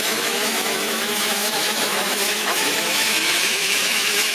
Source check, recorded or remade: remade